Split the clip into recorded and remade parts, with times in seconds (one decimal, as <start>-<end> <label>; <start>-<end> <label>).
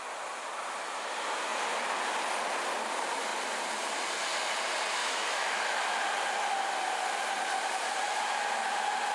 0.0-5.0 recorded; 5.0-6.1 remade; 6.1-9.1 recorded